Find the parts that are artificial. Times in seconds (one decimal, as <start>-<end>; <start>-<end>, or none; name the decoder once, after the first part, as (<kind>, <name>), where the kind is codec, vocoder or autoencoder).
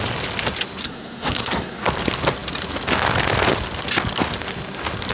0.8-1.9 (codec, SNAC)